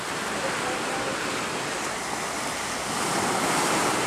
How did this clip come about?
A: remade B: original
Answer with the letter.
A